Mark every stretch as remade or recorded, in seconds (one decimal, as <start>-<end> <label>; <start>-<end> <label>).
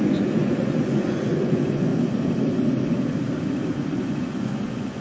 0.0-1.9 remade; 1.9-3.7 recorded; 3.7-5.0 remade